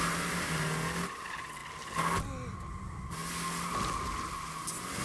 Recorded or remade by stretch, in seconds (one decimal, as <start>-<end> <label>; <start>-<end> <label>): 0.0-5.0 recorded